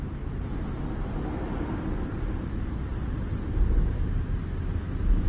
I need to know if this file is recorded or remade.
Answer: recorded